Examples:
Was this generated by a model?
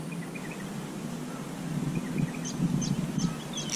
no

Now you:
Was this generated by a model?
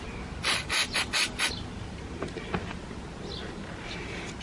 no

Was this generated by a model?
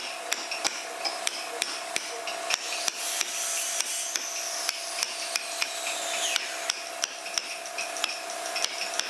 no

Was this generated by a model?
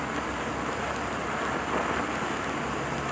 no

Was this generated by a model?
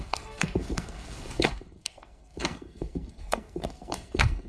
yes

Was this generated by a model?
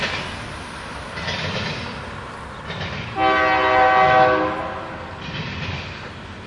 no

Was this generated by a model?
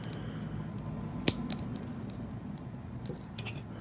no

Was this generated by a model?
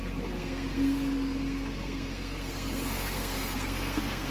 yes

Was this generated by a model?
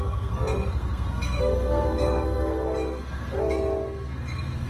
yes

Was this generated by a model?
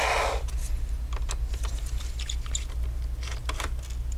no